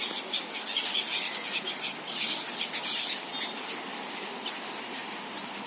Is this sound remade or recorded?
recorded